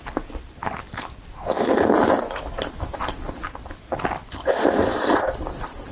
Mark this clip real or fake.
real